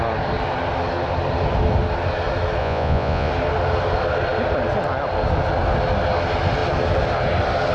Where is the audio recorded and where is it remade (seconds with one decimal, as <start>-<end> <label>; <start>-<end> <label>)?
0.0-2.6 recorded; 2.6-3.3 remade; 3.3-7.7 recorded